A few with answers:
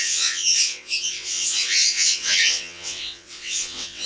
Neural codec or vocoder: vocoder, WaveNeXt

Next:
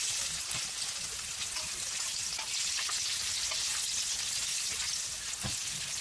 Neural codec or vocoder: none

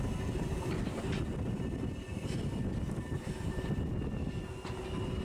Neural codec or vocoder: none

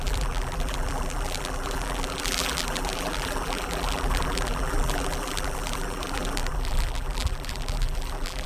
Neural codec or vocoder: vocoder, BigVGAN v2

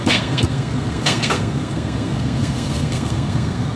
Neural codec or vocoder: codec, SNAC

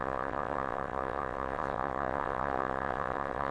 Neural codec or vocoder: vocoder, WaveNeXt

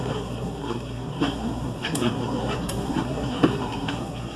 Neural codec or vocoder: codec, SNAC